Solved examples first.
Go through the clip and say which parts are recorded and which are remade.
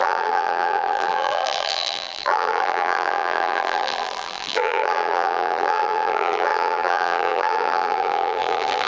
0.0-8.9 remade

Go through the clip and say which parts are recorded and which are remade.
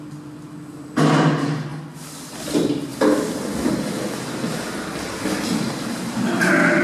0.0-6.8 recorded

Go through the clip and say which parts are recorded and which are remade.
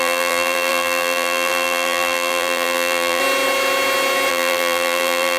0.0-3.2 remade; 3.2-4.3 recorded; 4.3-5.4 remade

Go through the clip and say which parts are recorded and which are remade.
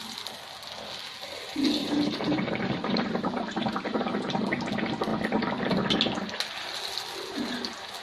0.0-1.8 recorded; 1.8-4.4 remade; 4.4-8.0 recorded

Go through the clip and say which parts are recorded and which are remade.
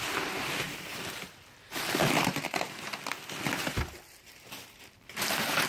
0.0-2.9 remade; 2.9-4.2 recorded; 4.2-5.7 remade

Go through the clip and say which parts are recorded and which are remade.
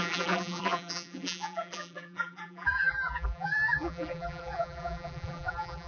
0.0-5.9 remade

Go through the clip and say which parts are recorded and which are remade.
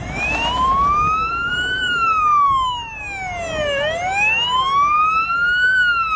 0.0-0.7 remade; 0.7-1.3 recorded; 1.3-2.3 remade; 2.3-6.2 recorded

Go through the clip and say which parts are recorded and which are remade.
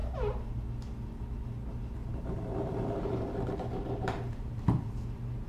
0.0-0.6 remade; 0.6-2.0 recorded; 2.0-5.5 remade